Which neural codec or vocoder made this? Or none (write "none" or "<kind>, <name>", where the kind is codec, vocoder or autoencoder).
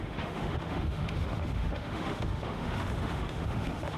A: autoencoder, DAC-VAE